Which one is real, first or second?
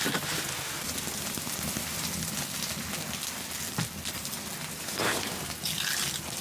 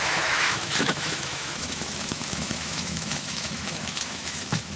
first